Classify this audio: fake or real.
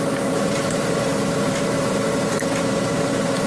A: fake